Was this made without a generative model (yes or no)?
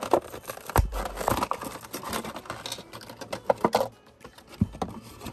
yes